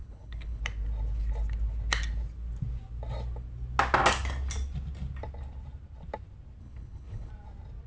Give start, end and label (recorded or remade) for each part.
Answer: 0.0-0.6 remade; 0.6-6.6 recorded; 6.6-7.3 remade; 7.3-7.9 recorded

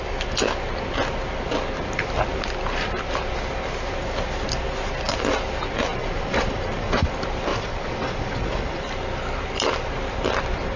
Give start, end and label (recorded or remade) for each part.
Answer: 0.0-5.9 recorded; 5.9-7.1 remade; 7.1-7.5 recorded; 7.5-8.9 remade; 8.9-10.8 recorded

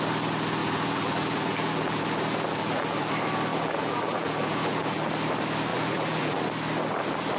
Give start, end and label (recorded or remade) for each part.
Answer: 0.0-0.6 recorded; 0.6-2.0 remade; 2.0-2.6 recorded; 2.6-3.1 remade; 3.1-3.5 recorded; 3.5-5.1 remade; 5.1-5.7 recorded; 5.7-6.4 remade; 6.4-7.4 recorded